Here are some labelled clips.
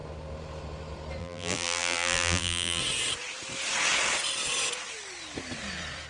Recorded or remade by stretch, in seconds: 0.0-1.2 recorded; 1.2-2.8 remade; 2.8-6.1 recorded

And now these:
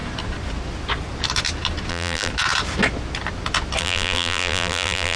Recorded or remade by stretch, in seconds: 0.0-1.9 recorded; 1.9-2.3 remade; 2.3-3.8 recorded; 3.8-5.2 remade

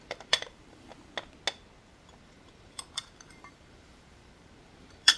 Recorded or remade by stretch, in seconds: 0.0-0.9 remade; 0.9-1.9 recorded; 1.9-5.2 remade

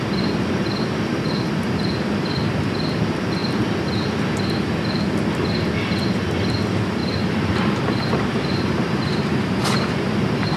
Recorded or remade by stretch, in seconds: 0.0-1.1 recorded; 1.1-1.9 remade; 1.9-7.0 recorded; 7.0-10.6 remade

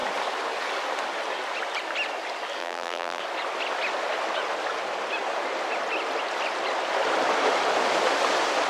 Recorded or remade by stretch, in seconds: 0.0-2.6 recorded; 2.6-3.2 remade; 3.2-8.7 recorded

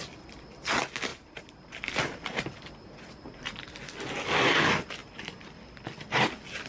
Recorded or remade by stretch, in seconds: 0.0-1.1 recorded; 1.1-3.7 remade; 3.7-5.0 recorded; 5.0-5.5 remade; 5.5-6.7 recorded

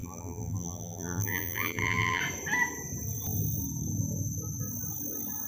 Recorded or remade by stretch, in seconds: 0.0-2.2 remade; 2.2-5.5 recorded